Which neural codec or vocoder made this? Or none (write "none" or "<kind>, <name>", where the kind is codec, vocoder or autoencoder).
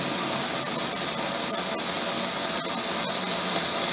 none